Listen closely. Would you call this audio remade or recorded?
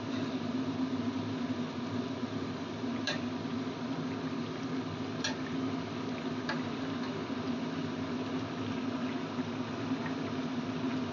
recorded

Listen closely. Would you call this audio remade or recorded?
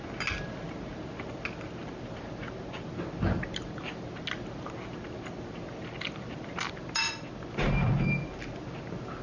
recorded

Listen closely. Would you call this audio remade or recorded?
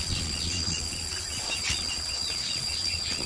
remade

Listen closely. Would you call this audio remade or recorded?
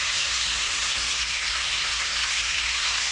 remade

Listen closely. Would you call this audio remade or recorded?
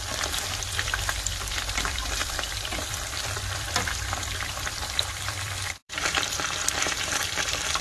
remade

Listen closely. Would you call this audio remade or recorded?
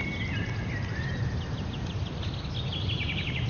recorded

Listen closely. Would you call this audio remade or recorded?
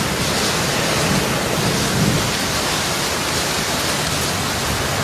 recorded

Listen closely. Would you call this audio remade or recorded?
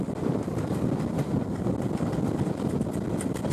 recorded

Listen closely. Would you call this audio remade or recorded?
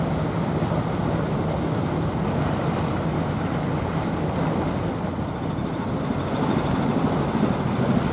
recorded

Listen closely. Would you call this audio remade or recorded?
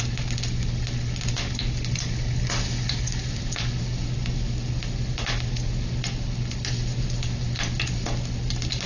recorded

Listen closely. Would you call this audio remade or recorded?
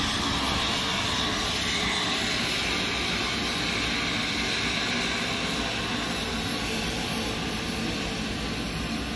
recorded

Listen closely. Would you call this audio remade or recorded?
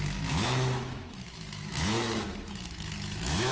remade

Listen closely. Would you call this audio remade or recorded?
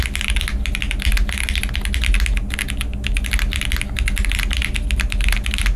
recorded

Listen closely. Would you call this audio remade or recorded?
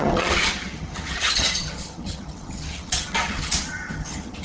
remade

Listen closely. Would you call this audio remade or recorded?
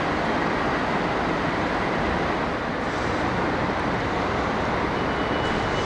recorded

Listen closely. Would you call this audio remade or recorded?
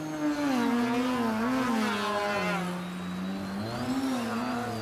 recorded